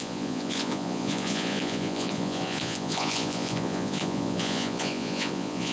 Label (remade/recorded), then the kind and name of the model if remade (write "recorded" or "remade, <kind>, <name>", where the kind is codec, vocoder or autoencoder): remade, vocoder, Vocos